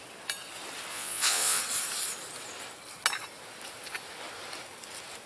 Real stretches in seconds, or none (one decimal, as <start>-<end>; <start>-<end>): 0.0-0.9; 1.6-5.3